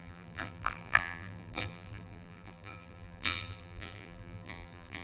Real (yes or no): no